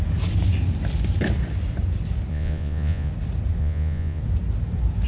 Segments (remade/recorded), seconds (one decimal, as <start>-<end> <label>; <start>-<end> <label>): 0.0-2.3 recorded; 2.3-3.1 remade; 3.1-3.6 recorded; 3.6-4.2 remade; 4.2-5.1 recorded